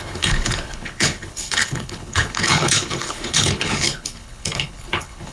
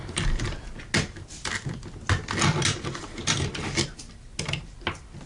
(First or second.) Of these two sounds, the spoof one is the first